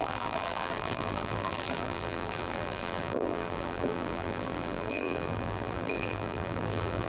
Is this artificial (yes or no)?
yes